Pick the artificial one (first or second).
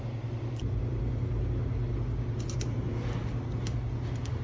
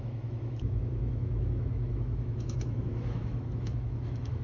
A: second